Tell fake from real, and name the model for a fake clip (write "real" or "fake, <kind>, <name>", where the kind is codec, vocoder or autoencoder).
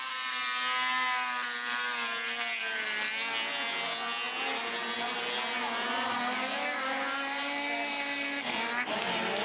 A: real